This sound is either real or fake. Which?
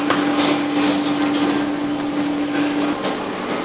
real